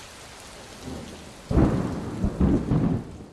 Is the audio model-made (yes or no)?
no